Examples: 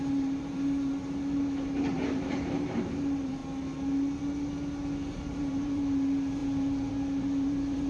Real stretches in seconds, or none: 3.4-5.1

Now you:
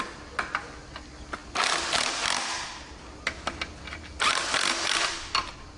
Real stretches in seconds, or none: 0.0-5.8

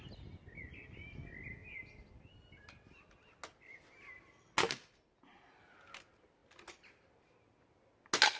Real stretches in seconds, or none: 0.0-8.4

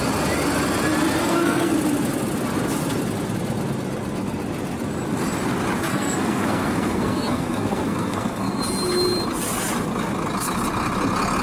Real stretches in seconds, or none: 0.0-1.2; 1.7-5.9; 8.6-11.4

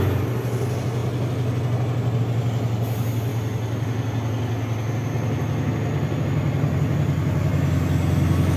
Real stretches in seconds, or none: 0.0-8.6